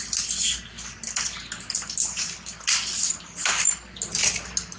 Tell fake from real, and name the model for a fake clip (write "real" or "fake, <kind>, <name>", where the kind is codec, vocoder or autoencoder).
real